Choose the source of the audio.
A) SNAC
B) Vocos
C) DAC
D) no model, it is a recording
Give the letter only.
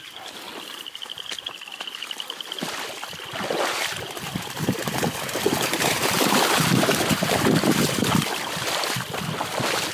D